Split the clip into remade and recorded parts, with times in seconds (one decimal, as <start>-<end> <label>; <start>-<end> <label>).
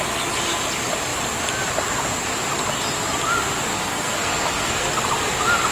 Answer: 0.0-3.7 recorded; 3.7-4.9 remade; 4.9-5.7 recorded